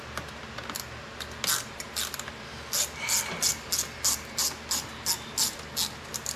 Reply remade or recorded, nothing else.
recorded